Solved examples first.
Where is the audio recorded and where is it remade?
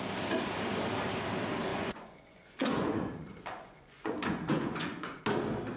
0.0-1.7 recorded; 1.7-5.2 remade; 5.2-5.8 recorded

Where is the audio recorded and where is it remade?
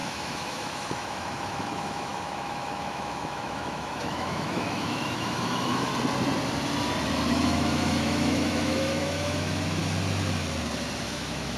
0.0-5.9 remade; 5.9-7.3 recorded; 7.3-9.8 remade; 9.8-11.0 recorded; 11.0-11.6 remade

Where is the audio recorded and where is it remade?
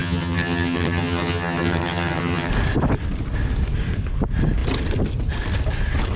0.0-2.5 remade; 2.5-6.2 recorded